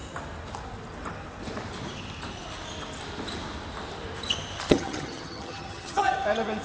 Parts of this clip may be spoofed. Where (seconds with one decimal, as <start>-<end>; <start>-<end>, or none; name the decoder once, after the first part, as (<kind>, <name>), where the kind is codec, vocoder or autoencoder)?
4.7-6.1 (vocoder, HiFi-GAN)